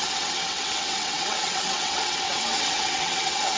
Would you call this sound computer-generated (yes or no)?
yes